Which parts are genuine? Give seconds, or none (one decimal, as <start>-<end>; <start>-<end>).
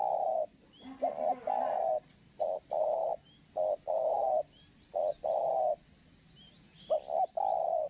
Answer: 0.0-7.9